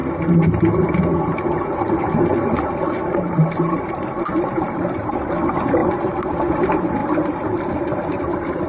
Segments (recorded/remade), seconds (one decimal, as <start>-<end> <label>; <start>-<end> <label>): 0.0-8.7 recorded

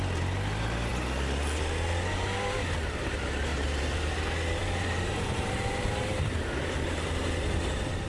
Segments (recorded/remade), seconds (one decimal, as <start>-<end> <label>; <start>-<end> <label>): 0.0-3.5 recorded; 3.5-4.1 remade; 4.1-4.6 recorded; 4.6-6.3 remade; 6.3-8.1 recorded

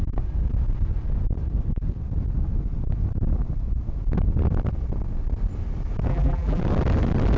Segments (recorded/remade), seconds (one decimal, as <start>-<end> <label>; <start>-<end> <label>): 0.0-6.1 recorded; 6.1-6.6 remade; 6.6-7.4 recorded

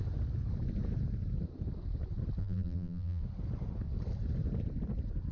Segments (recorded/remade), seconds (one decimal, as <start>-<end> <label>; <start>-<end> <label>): 0.0-2.4 recorded; 2.4-3.2 remade; 3.2-5.3 recorded

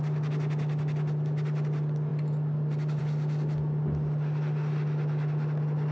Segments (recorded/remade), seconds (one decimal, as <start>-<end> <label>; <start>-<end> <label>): 0.0-2.1 recorded; 2.1-3.0 remade; 3.0-5.9 recorded